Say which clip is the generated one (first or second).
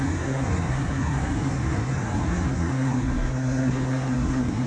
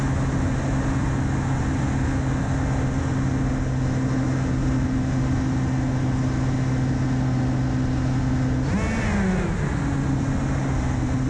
first